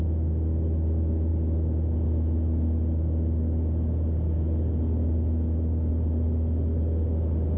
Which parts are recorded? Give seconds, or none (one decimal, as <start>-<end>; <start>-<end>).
0.0-7.6